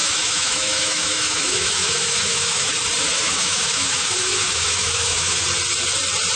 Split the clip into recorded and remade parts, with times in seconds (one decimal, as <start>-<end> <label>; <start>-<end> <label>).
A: 0.0-2.7 remade; 2.7-3.1 recorded; 3.1-5.4 remade; 5.4-6.4 recorded